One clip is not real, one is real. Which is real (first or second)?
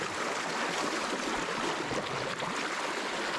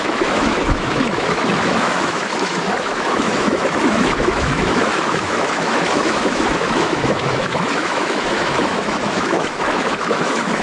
first